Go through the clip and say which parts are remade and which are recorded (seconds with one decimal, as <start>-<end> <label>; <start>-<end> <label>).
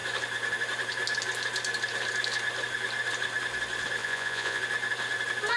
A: 0.0-4.0 recorded; 4.0-4.6 remade; 4.6-5.6 recorded